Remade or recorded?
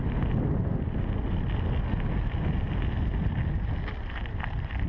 recorded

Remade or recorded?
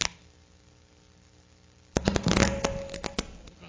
recorded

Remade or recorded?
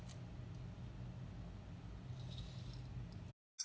recorded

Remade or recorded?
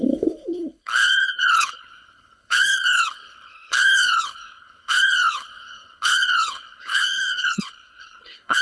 remade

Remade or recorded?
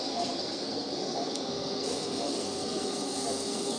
remade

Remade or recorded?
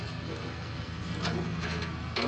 remade